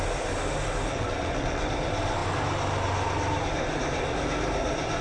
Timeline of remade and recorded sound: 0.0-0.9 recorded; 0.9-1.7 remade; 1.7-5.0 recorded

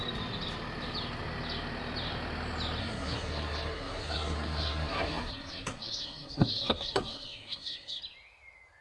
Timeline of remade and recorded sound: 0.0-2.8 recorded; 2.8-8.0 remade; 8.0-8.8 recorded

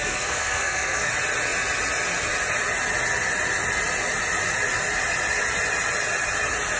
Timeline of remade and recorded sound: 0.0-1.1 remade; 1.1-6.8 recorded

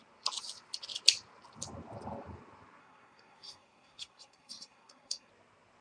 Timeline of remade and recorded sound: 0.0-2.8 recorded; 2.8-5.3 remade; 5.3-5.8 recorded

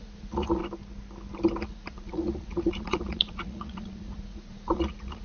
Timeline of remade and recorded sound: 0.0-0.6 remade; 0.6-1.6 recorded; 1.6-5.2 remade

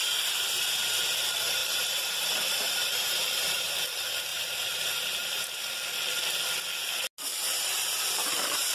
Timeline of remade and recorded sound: 0.0-1.6 recorded; 1.6-3.7 remade; 3.7-4.3 recorded; 4.3-5.7 remade; 5.7-7.3 recorded; 7.3-8.7 remade